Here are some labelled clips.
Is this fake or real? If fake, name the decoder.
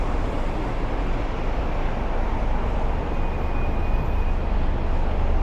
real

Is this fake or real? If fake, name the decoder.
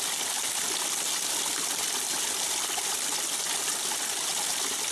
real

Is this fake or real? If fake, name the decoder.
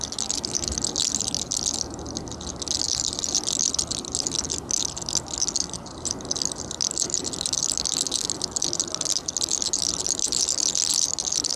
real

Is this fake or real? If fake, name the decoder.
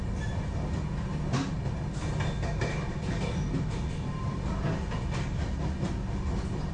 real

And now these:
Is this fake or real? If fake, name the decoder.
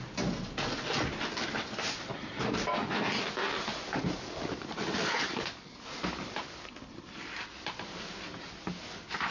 real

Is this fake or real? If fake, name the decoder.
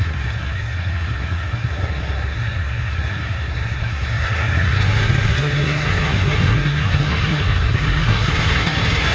fake, codec, SNAC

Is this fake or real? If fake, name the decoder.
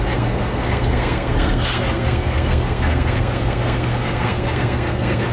fake, codec, SNAC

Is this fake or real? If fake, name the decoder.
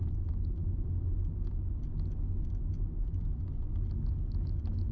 real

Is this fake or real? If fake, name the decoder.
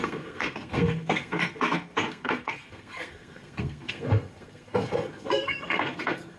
fake, codec, SNAC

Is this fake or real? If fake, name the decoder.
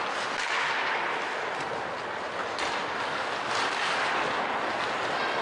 real